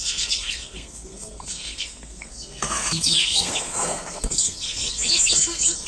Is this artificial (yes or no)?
yes